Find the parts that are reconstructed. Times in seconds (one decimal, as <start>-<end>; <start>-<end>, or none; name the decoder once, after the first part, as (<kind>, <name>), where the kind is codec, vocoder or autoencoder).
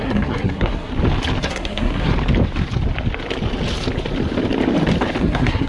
0.0-0.9 (codec, SNAC); 1.4-2.1; 5.2-5.7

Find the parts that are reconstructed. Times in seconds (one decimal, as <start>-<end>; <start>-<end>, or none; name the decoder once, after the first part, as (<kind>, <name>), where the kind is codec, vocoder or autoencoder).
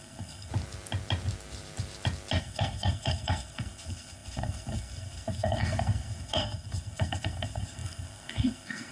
0.0-0.5 (codec, SNAC); 2.4-8.9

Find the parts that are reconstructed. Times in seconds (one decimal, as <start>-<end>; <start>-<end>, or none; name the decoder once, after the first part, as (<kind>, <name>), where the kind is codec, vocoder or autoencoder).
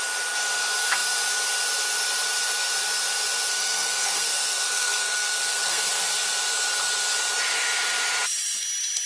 3.5-5.9 (codec, SNAC)